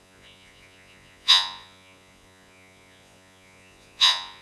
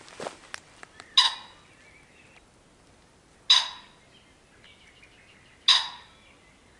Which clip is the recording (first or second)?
second